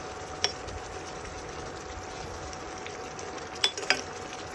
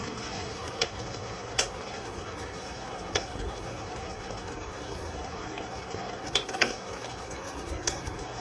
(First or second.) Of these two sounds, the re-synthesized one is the second